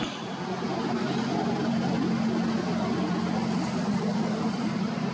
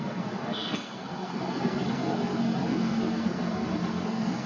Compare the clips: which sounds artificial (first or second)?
second